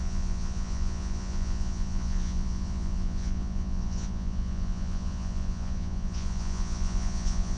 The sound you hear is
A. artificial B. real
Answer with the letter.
A